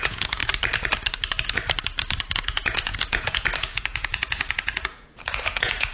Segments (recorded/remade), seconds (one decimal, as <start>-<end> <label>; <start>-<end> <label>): 0.0-0.4 remade; 0.4-2.3 recorded; 2.3-5.9 remade